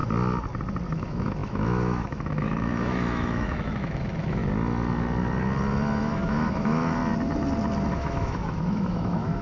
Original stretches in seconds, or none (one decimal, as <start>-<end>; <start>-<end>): 0.0-0.9; 4.4-6.0; 7.0-7.9